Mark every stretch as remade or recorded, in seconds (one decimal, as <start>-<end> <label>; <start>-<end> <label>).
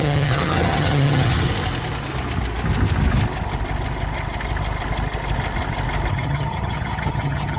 0.0-1.5 remade; 1.5-6.1 recorded; 6.1-7.6 remade